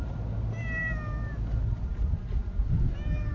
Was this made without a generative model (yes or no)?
yes